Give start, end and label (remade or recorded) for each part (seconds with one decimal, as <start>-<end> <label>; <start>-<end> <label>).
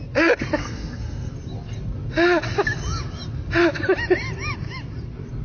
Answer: 0.0-0.6 recorded; 0.6-1.3 remade; 1.3-5.4 recorded